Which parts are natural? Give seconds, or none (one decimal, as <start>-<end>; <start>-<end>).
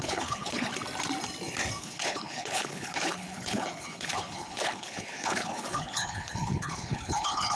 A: 0.7-1.8